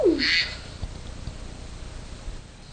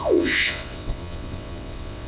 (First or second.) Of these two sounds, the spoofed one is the second